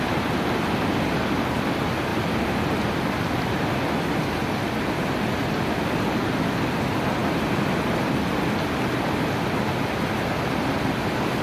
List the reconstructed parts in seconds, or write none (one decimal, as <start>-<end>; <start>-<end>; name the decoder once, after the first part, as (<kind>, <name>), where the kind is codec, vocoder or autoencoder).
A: none